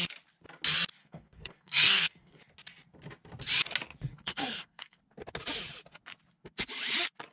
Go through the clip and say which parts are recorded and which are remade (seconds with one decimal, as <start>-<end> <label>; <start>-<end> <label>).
0.0-1.0 recorded; 1.0-2.4 remade; 2.4-4.1 recorded; 4.1-5.0 remade; 5.0-7.3 recorded